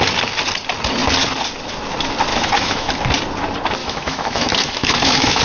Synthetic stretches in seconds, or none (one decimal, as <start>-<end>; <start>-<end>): 2.3-2.9; 3.8-5.4